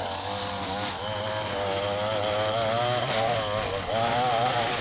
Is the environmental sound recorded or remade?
recorded